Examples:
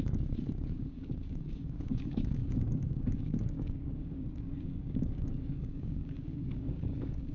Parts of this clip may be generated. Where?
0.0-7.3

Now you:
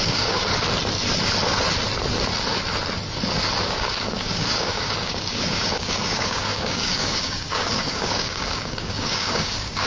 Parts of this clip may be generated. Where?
0.0-0.5; 3.6-9.9

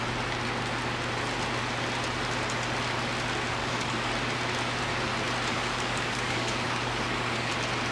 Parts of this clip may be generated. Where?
3.6-4.1; 5.5-7.5

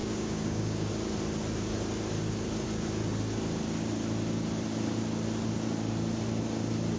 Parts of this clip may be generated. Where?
0.0-0.9